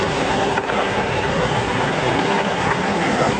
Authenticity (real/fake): fake